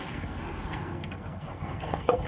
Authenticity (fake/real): fake